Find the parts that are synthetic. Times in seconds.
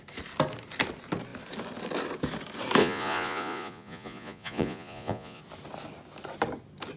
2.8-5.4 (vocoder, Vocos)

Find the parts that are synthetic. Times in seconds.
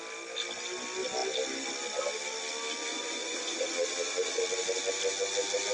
2.9-4.4 (vocoder, Vocos)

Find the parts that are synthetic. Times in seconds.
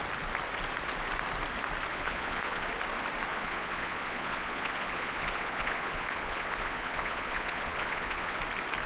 1.9-2.7 (vocoder, Vocos); 3.3-8.4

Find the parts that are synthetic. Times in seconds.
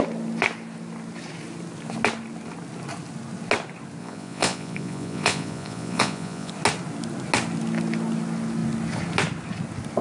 4.0-6.5 (vocoder, Vocos)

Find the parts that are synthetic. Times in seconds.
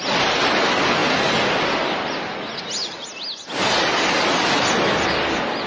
none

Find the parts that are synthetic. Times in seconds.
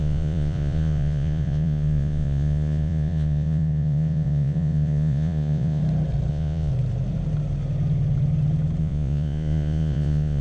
0.0-5.8 (vocoder, Vocos); 6.3-6.7; 8.8-10.4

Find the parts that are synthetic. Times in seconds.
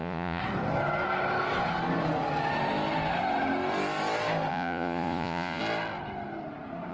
0.0-0.4 (vocoder, Vocos); 4.5-5.6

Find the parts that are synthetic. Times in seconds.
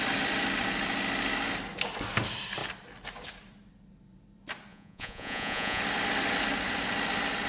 4.7-5.8 (vocoder, Vocos)